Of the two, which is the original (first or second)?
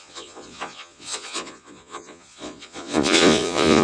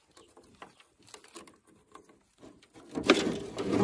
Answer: second